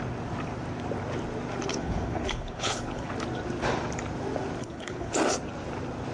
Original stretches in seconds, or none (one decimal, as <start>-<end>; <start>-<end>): 0.0-1.7; 3.1-4.6; 5.1-6.1